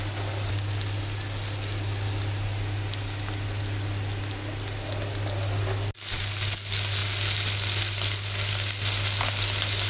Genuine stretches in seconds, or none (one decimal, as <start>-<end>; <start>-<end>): 0.0-9.9

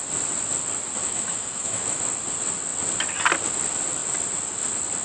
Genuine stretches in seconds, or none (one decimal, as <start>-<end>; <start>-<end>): 0.0-1.0; 2.0-5.0